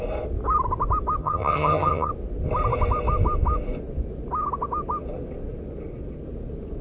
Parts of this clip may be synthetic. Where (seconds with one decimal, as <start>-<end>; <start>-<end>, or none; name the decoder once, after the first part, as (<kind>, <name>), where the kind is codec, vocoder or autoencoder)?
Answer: 1.2-2.1 (vocoder, HiFi-GAN)